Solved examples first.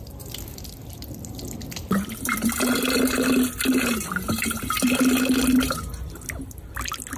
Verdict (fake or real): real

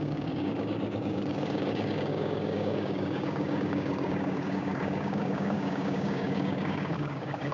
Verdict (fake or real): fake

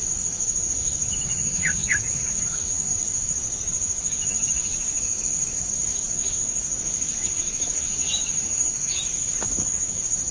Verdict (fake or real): fake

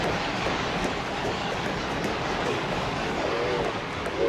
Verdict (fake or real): fake